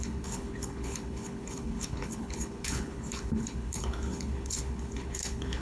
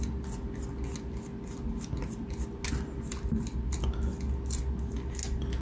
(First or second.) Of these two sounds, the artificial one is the first